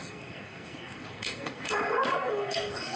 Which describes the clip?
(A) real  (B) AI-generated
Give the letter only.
B